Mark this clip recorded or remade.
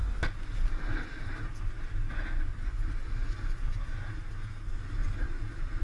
recorded